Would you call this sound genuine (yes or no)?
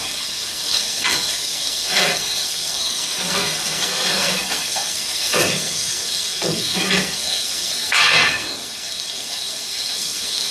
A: no